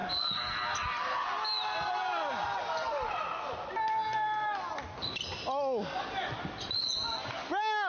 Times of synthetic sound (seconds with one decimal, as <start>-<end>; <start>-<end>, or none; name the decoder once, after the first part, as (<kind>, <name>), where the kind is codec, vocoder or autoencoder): none